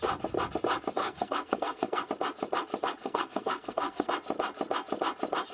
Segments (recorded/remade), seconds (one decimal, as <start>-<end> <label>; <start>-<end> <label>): 0.0-1.0 recorded; 1.0-2.1 remade; 2.1-3.0 recorded; 3.0-4.1 remade; 4.1-5.5 recorded